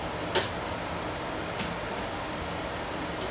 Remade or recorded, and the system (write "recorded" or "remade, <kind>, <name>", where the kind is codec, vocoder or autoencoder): recorded